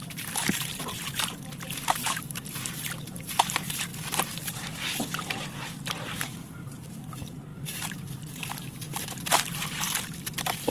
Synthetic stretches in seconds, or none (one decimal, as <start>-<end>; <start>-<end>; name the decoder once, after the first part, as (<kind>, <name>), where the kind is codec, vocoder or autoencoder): 0.0-3.9 (vocoder, BigVGAN v2); 5.6-10.7